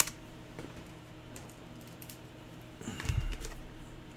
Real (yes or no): no